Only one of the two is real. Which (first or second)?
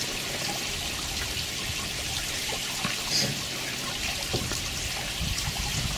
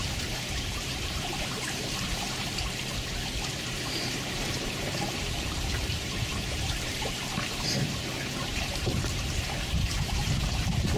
first